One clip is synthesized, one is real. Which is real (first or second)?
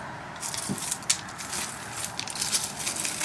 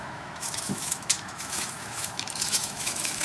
first